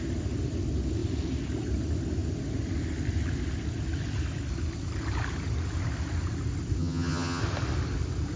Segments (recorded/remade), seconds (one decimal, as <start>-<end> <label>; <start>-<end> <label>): 0.0-6.8 recorded; 6.8-7.4 remade; 7.4-8.4 recorded